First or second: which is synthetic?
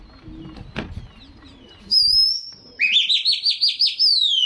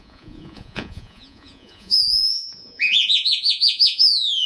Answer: second